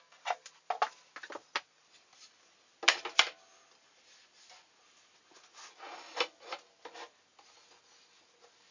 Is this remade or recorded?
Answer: recorded